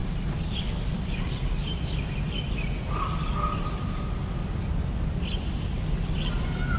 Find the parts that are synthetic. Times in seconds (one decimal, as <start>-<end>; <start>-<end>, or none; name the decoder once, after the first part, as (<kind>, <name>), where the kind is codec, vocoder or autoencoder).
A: 0.0-1.9 (vocoder, BigVGAN v2); 2.9-4.3